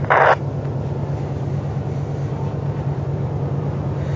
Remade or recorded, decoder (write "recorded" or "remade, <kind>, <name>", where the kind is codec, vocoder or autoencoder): recorded